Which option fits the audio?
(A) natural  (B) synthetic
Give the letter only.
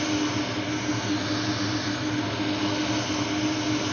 A